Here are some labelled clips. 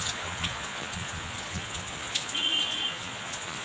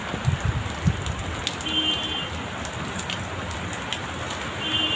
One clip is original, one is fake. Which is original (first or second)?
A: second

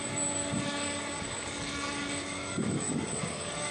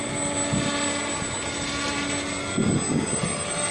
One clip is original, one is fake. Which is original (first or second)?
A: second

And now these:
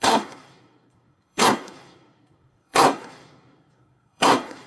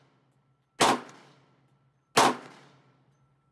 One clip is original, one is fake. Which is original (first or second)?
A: second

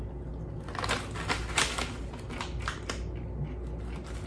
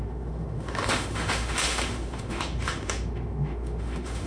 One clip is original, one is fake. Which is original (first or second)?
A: first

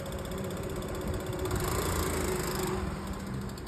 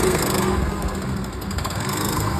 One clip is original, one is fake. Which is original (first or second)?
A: first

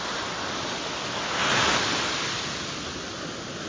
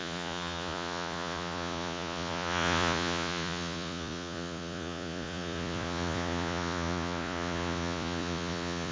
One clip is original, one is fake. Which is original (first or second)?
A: first